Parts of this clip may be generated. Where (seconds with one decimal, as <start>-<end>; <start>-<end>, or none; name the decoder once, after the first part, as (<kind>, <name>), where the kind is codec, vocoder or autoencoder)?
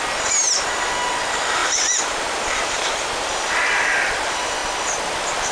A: 1.6-3.1 (vocoder, BigVGAN v2)